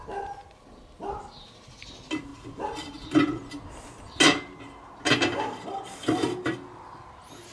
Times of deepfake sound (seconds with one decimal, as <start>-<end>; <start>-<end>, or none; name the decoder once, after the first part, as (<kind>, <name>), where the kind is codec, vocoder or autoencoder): none